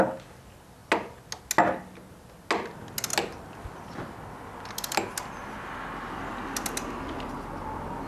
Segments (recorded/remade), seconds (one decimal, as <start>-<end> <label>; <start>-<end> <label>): 0.0-8.1 recorded